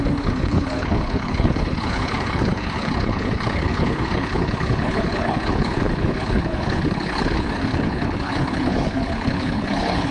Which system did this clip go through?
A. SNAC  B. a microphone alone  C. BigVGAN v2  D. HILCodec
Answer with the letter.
D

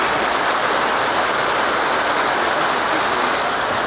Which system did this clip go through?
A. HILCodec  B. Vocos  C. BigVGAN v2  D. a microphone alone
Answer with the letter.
D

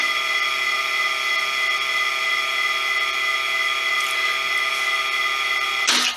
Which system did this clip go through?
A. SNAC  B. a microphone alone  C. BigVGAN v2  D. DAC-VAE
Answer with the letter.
B